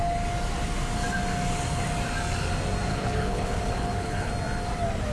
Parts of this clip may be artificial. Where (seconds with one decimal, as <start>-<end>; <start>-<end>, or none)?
2.9-4.3